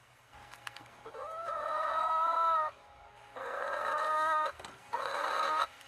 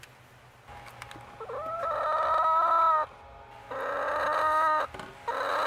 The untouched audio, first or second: second